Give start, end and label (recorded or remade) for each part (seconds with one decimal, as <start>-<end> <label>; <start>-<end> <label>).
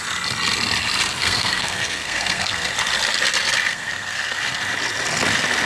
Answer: 0.0-1.2 recorded; 1.2-2.7 remade; 2.7-3.7 recorded; 3.7-4.4 remade; 4.4-5.7 recorded